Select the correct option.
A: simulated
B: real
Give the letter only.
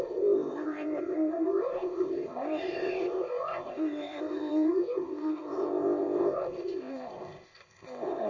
A